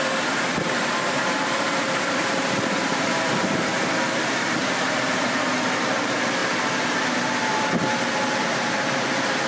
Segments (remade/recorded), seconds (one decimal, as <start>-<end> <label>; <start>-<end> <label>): 0.0-6.4 remade; 6.4-8.3 recorded; 8.3-9.5 remade